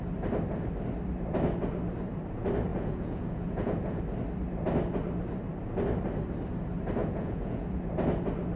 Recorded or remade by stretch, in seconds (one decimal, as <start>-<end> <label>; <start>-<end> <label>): 0.0-2.7 recorded; 2.7-4.0 remade; 4.0-7.0 recorded; 7.0-7.8 remade; 7.8-8.6 recorded